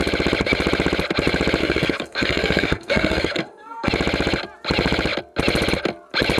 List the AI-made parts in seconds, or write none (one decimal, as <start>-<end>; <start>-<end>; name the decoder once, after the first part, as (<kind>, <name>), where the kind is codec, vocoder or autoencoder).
1.6-3.9 (codec, SNAC)